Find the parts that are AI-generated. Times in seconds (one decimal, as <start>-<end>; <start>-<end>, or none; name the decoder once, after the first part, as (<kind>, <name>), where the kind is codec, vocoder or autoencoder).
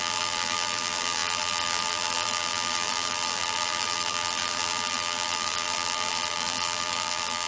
0.0-7.5 (vocoder, BigVGAN v2)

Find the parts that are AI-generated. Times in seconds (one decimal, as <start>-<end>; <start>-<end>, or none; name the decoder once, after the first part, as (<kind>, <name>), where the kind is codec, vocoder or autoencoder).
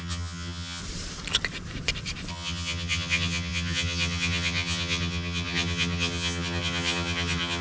0.0-0.8 (vocoder, HiFi-GAN); 2.3-7.6